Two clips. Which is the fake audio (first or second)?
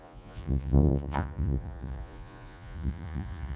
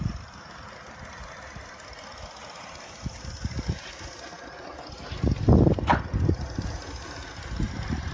first